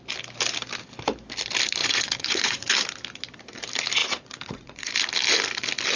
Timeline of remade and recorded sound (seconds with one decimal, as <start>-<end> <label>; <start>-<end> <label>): 0.0-1.8 recorded; 1.8-2.7 remade; 2.7-4.0 recorded; 4.0-4.9 remade; 4.9-6.0 recorded